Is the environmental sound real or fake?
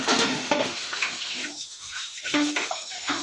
fake